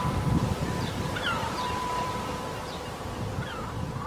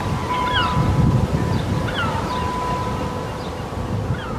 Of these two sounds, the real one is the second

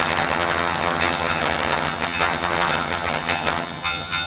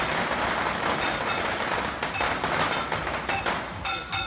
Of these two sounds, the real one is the second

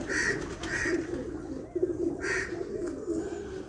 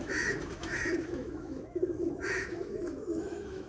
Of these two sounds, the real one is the first